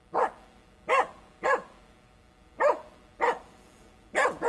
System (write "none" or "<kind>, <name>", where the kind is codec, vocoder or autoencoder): none